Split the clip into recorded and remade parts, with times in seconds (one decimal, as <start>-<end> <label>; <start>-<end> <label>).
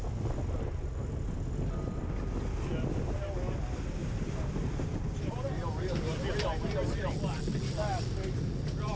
0.0-4.0 recorded; 4.0-7.1 remade; 7.1-9.0 recorded